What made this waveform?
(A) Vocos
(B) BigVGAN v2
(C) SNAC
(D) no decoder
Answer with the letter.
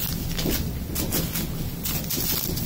D